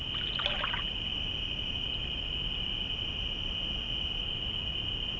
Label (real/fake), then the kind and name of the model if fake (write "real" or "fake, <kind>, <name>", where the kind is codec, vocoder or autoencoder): real